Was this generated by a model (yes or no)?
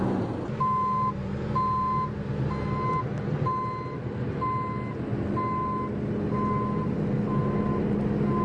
no